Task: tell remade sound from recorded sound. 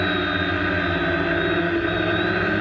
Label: recorded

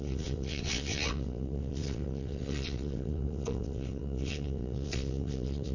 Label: remade